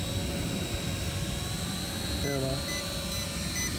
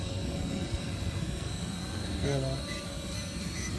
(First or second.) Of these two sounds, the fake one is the second